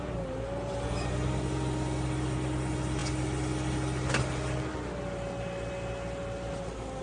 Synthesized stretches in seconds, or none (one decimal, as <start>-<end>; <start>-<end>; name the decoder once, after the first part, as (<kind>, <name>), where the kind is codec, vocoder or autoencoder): none